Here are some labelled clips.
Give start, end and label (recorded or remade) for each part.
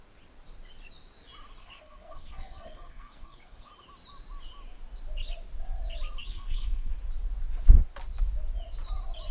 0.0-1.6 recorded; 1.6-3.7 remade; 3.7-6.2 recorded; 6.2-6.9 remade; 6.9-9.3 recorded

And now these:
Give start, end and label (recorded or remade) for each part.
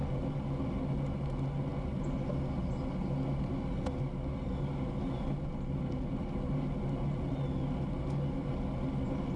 0.0-9.4 recorded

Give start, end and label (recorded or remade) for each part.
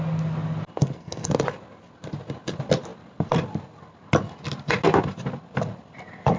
0.0-0.8 recorded; 0.8-1.3 remade; 1.3-6.4 recorded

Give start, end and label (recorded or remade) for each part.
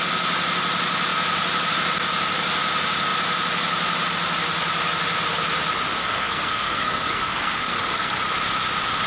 0.0-6.0 recorded; 6.0-8.2 remade; 8.2-9.1 recorded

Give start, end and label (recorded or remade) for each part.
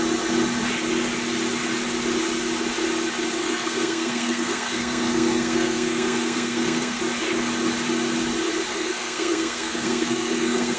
0.0-3.4 recorded; 3.4-7.0 remade; 7.0-8.7 recorded; 8.7-10.8 remade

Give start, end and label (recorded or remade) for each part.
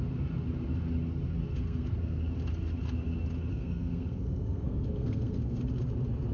0.0-1.4 recorded; 1.4-2.2 remade; 2.2-3.5 recorded; 3.5-5.6 remade; 5.6-6.3 recorded